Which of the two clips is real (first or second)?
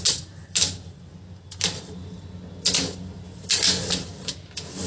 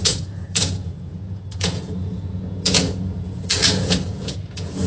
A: first